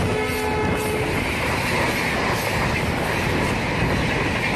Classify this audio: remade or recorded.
recorded